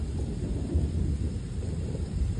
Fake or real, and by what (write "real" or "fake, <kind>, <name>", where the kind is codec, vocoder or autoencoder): real